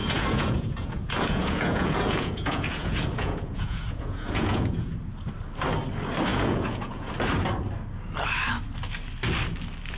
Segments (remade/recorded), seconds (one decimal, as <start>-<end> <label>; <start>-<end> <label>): 0.0-4.9 remade; 4.9-6.3 recorded; 6.3-7.1 remade; 7.1-10.0 recorded